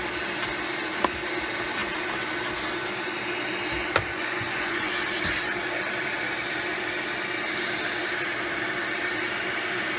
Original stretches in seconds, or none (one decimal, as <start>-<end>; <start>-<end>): 0.0-4.1; 4.9-10.0